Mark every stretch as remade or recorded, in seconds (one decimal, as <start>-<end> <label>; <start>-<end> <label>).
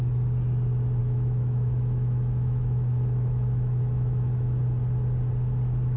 0.0-1.0 recorded; 1.0-4.6 remade; 4.6-6.0 recorded